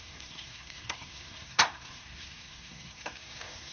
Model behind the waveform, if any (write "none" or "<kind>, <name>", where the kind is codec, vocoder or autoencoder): codec, SNAC